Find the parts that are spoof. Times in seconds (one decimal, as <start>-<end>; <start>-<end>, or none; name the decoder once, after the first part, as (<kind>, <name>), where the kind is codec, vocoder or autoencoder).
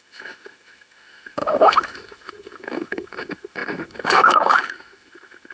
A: 0.0-5.5 (autoencoder, DAC-VAE)